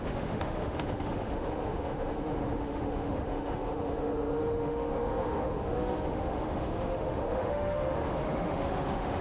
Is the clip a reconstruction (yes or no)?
yes